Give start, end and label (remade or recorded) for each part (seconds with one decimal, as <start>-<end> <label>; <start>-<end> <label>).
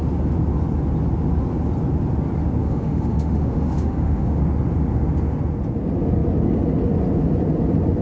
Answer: 0.0-2.6 recorded; 2.6-4.4 remade; 4.4-8.0 recorded